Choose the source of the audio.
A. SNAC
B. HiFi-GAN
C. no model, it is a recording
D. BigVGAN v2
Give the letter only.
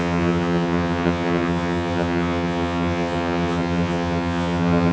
B